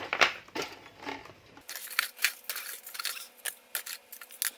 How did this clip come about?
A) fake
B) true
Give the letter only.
B